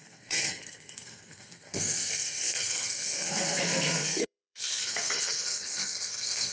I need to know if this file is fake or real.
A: fake